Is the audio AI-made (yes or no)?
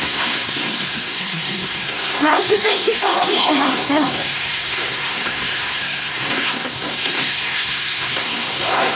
yes